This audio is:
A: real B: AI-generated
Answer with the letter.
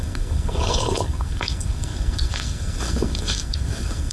B